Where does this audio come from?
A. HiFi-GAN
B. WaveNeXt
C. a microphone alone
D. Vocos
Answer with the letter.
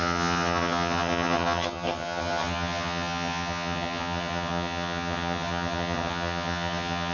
A